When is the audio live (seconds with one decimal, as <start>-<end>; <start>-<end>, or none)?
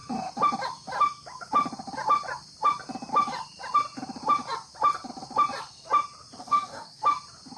0.0-6.4; 7.0-7.6